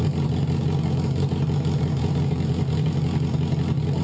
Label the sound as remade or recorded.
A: recorded